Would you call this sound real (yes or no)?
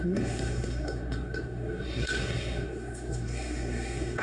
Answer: no